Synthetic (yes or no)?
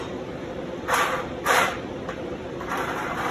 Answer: yes